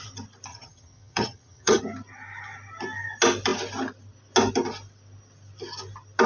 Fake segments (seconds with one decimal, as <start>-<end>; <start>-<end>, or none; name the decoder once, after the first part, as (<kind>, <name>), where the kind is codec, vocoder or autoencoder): 0.5-1.8 (vocoder, HiFi-GAN)